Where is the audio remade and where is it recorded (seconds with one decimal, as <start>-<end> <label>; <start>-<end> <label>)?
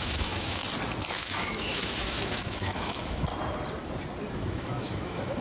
0.0-0.6 remade; 0.6-1.1 recorded; 1.1-3.3 remade; 3.3-4.3 recorded; 4.3-5.4 remade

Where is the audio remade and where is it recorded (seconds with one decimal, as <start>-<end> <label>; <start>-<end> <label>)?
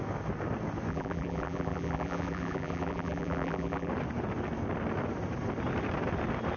0.0-0.9 recorded; 0.9-3.9 remade; 3.9-6.6 recorded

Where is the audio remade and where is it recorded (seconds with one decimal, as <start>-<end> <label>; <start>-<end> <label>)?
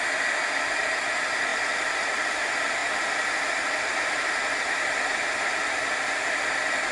0.0-1.5 recorded; 1.5-2.3 remade; 2.3-2.8 recorded; 2.8-6.9 remade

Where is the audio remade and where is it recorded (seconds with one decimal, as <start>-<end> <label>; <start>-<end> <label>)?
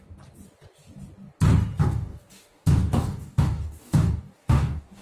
0.0-1.8 recorded; 1.8-5.0 remade